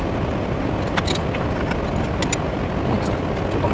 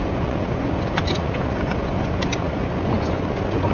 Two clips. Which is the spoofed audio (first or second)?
second